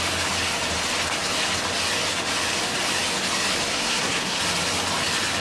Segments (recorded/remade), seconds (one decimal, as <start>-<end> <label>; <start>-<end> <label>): 0.0-3.7 recorded; 3.7-4.4 remade; 4.4-5.4 recorded